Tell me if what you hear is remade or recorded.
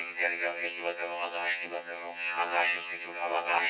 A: remade